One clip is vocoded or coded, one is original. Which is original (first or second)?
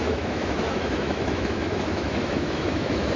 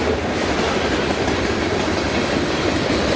second